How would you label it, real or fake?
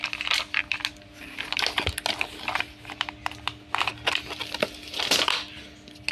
real